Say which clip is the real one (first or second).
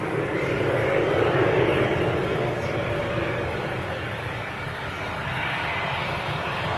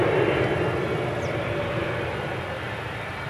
second